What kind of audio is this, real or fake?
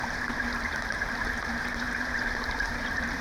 fake